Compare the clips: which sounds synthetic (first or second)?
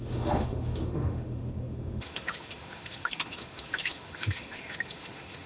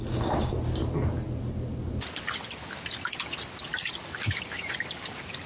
first